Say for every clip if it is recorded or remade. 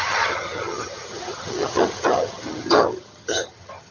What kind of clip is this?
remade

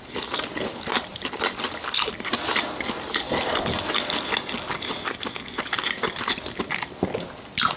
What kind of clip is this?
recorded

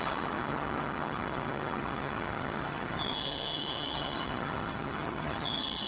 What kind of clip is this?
remade